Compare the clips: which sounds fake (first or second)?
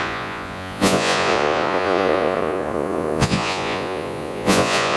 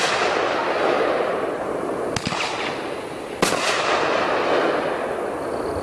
first